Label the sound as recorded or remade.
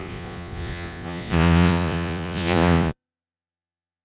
remade